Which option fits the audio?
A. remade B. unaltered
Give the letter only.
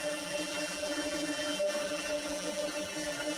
A